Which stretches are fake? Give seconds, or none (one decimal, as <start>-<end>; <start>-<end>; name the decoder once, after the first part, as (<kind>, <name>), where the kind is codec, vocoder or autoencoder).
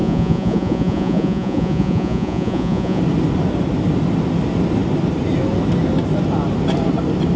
0.0-3.0 (vocoder, Vocos)